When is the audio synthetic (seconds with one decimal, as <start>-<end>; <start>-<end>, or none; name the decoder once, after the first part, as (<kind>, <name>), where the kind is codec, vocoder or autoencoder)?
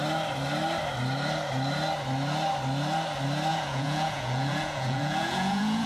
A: 3.5-5.9 (vocoder, Vocos)